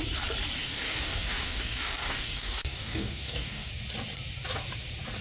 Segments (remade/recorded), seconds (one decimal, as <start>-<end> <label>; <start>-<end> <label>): 0.0-0.6 recorded; 0.6-3.7 remade; 3.7-5.2 recorded